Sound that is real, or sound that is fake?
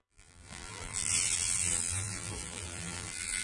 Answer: fake